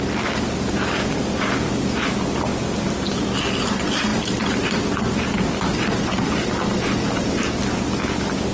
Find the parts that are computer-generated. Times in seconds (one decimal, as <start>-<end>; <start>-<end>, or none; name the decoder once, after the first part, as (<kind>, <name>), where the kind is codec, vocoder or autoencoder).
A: none